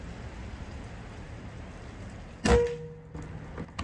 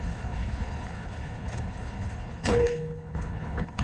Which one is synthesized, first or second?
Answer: second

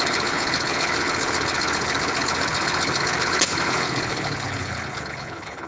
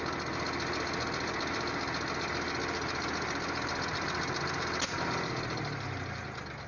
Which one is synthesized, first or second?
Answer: first